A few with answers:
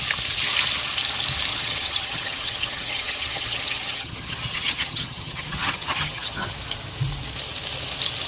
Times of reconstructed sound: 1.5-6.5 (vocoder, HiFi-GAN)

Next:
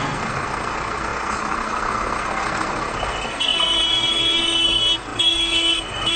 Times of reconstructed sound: 0.0-6.2 (codec, SNAC)

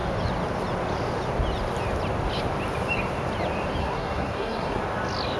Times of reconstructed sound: 3.8-4.8 (codec, SNAC)

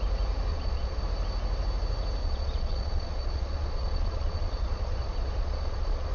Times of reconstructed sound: 0.5-1.0 (vocoder, Vocos); 2.2-6.1

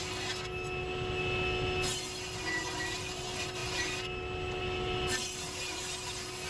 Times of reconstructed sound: none